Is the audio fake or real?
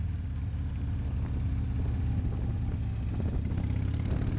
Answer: real